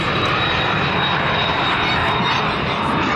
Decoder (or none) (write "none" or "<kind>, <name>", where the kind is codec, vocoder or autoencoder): none